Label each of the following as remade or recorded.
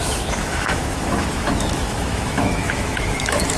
remade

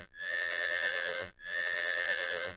remade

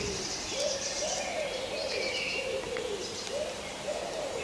remade